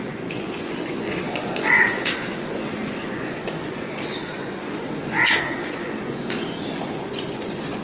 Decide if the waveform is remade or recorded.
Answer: remade